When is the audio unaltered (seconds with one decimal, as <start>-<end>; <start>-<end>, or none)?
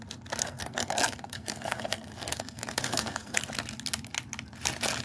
0.0-0.4; 3.4-5.0